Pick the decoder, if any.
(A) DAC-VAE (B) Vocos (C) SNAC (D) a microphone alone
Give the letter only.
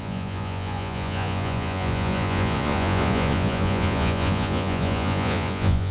B